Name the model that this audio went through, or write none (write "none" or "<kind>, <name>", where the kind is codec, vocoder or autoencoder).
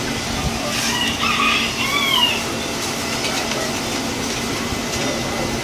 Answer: none